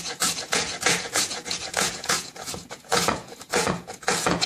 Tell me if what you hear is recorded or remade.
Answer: remade